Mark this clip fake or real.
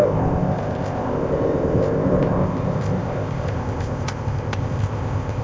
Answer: fake